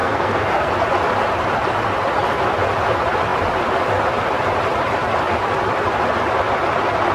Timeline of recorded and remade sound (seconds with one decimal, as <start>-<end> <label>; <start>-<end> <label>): 0.0-0.7 remade; 0.7-7.1 recorded